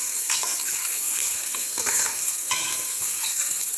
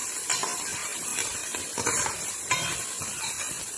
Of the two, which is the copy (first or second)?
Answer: first